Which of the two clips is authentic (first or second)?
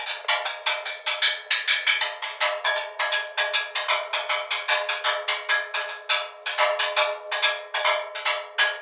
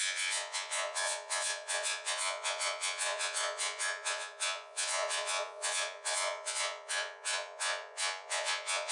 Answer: first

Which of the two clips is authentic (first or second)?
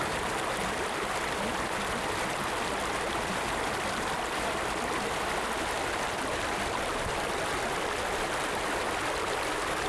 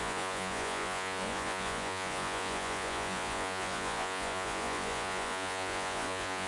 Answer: first